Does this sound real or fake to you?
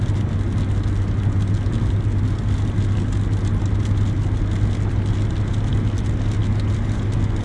real